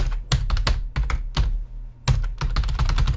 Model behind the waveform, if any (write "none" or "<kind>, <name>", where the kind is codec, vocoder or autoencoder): none